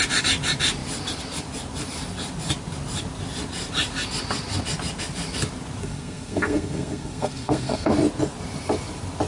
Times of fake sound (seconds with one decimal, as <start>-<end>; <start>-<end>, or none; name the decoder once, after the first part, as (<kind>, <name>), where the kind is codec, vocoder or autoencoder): 5.8-7.9 (codec, SNAC)